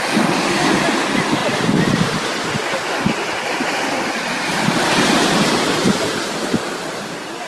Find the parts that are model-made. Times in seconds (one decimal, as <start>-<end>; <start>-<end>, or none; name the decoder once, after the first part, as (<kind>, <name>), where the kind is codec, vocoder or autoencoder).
none